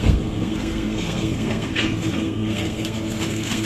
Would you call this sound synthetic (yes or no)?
yes